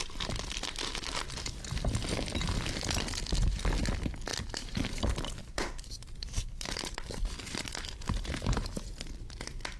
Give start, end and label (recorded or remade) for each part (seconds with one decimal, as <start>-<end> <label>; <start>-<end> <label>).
0.0-4.3 recorded; 4.3-5.0 remade; 5.0-5.4 recorded; 5.4-8.7 remade; 8.7-9.8 recorded